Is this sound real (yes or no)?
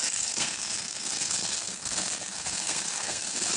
no